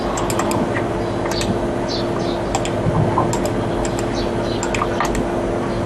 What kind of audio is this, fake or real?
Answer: real